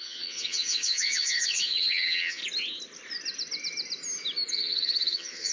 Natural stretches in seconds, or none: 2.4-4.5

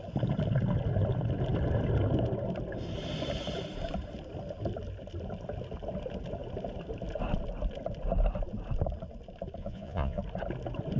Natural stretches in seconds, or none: 0.0-9.6; 10.2-11.0